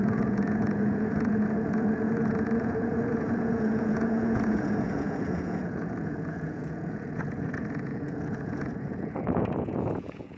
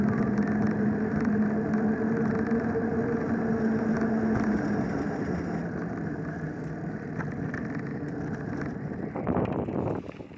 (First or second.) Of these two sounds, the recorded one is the second